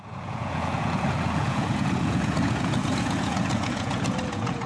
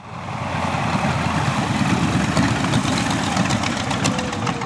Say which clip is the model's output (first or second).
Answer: first